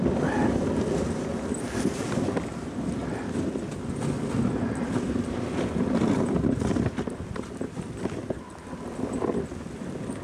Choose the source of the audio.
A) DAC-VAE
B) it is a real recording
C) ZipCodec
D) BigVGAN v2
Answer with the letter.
B